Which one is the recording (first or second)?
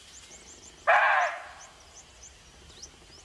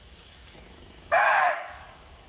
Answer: first